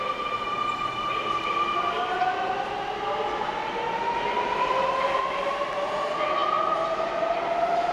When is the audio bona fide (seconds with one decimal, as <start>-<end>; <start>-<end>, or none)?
0.0-7.9